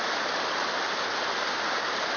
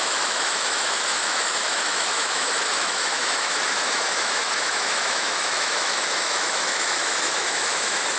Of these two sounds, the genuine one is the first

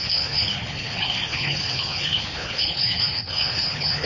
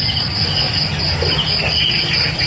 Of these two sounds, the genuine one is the second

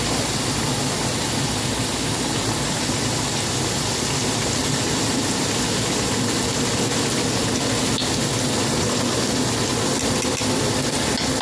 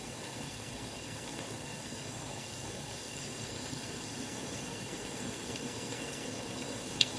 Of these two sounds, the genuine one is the first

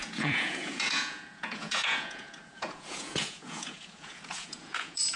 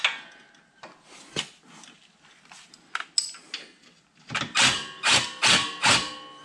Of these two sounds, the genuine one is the second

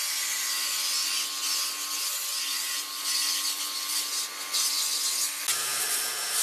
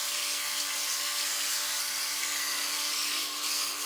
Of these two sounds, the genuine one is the first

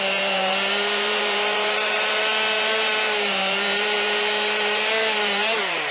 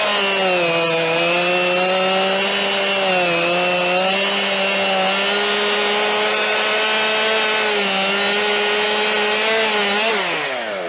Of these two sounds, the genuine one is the second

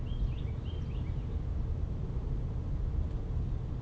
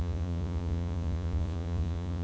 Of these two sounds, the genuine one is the first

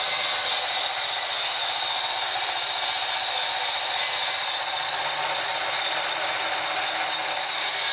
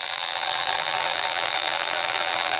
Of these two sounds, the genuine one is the first